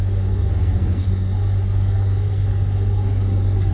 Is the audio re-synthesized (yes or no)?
yes